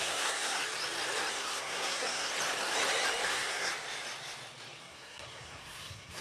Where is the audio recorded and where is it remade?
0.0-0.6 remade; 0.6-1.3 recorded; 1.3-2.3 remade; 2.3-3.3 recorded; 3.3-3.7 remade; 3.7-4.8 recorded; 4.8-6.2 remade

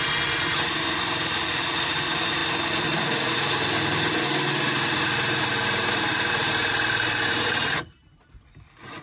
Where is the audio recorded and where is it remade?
0.0-2.4 recorded; 2.4-3.0 remade; 3.0-7.3 recorded; 7.3-8.3 remade; 8.3-9.0 recorded